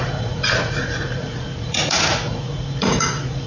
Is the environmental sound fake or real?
fake